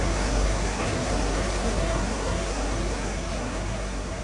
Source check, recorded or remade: remade